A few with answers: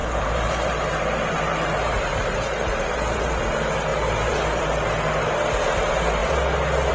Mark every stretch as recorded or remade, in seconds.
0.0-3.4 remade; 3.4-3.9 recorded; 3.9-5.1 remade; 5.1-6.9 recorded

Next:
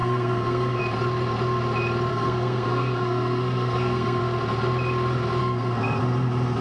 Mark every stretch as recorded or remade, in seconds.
0.0-0.8 remade; 0.8-2.1 recorded; 2.1-4.2 remade; 4.2-5.4 recorded; 5.4-6.0 remade; 6.0-6.6 recorded